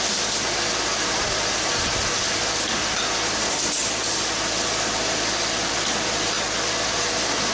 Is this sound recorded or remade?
recorded